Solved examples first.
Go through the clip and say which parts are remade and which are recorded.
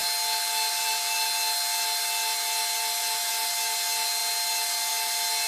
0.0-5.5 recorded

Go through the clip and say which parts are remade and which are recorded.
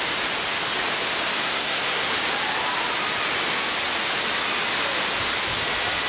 0.0-1.4 recorded; 1.4-2.1 remade; 2.1-6.1 recorded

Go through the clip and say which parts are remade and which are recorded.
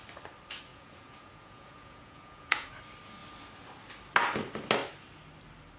0.0-0.7 recorded; 0.7-2.7 remade; 2.7-5.8 recorded